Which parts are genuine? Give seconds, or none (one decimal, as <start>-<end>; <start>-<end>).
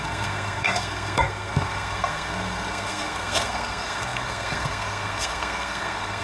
none